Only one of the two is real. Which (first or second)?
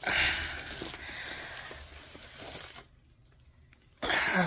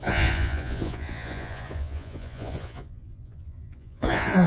first